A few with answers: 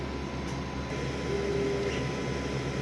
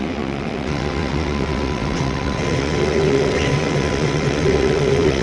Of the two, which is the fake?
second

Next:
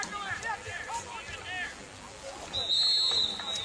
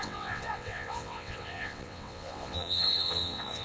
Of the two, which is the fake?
second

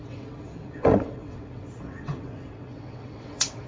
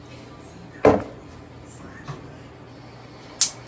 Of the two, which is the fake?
first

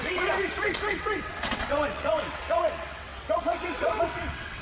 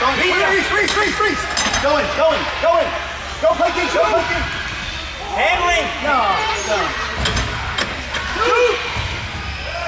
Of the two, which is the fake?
first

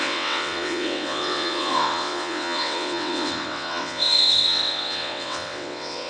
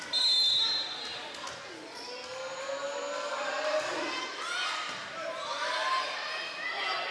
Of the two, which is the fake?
first